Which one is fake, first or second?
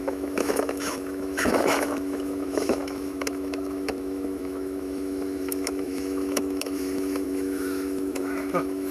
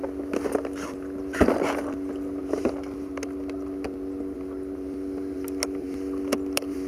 first